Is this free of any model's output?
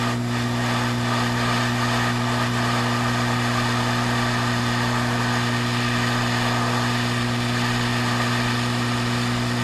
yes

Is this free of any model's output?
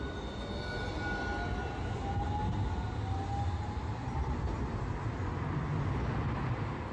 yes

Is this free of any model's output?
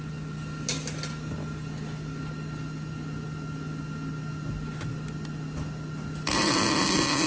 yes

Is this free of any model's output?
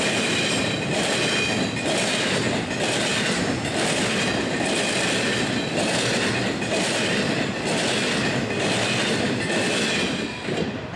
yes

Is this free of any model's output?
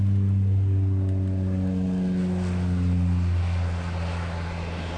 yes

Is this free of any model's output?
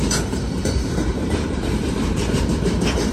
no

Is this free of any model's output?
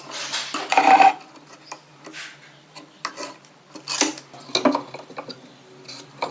yes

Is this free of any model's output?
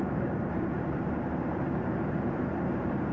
no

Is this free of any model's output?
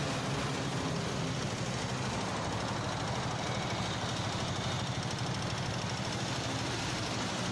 yes